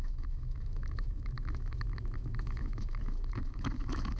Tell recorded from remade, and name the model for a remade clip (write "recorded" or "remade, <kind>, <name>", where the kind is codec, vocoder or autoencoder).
remade, autoencoder, DAC-VAE